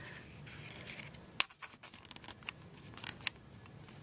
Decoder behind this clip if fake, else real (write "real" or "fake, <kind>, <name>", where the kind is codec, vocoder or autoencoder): real